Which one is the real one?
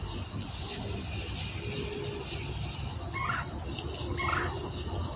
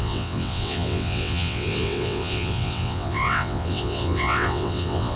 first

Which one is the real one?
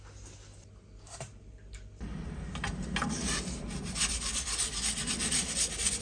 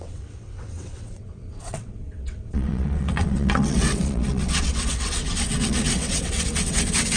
first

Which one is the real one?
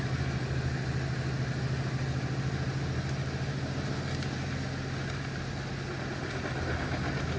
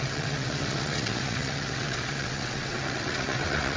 first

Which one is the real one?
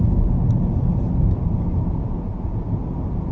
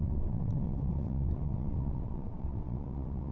first